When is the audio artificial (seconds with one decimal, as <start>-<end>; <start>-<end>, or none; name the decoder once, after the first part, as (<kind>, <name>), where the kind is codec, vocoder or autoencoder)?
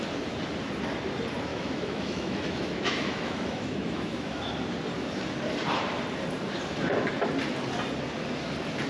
1.5-4.5 (autoencoder, DAC-VAE)